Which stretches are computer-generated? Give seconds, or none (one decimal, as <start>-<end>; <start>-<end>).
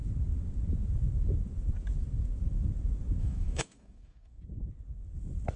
3.2-4.4